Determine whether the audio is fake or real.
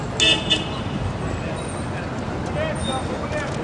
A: real